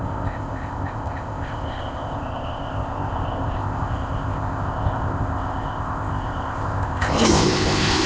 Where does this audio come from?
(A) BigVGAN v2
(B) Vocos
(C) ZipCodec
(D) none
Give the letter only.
C